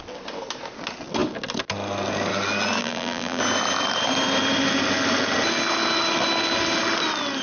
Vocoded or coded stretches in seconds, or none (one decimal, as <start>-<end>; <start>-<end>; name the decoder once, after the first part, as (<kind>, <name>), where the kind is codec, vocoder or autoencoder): 2.8-3.4 (vocoder, BigVGAN v2)